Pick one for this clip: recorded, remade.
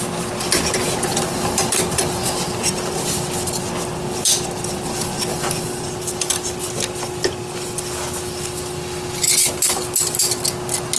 recorded